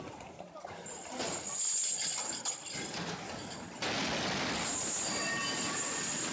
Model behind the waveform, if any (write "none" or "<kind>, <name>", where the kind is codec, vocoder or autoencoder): none